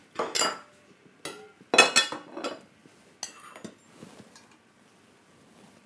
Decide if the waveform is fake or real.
real